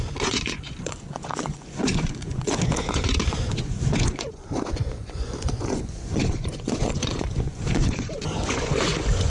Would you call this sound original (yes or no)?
no